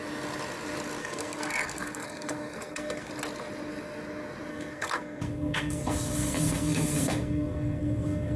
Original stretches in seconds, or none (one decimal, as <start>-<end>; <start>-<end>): 0.0-1.0; 3.1-4.5